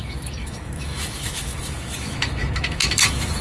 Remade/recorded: remade